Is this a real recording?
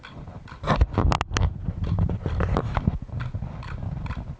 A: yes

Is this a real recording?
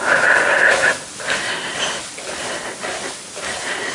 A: yes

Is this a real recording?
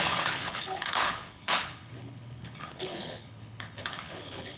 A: no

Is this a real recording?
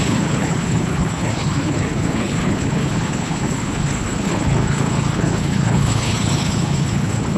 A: no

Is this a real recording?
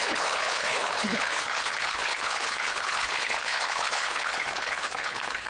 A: no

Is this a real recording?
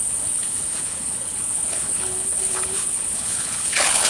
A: no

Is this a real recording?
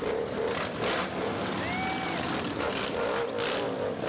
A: yes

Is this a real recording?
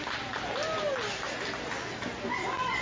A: yes